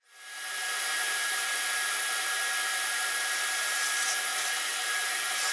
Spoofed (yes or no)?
no